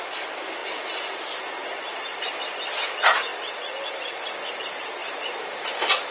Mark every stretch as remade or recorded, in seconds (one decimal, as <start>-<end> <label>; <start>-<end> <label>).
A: 0.0-1.6 recorded; 1.6-2.5 remade; 2.5-5.0 recorded; 5.0-6.1 remade